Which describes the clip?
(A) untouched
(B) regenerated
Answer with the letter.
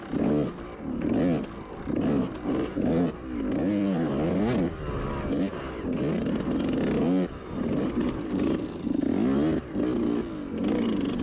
A